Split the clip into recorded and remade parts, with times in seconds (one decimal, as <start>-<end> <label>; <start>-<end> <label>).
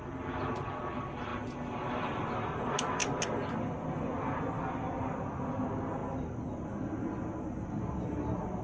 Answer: 0.0-8.6 recorded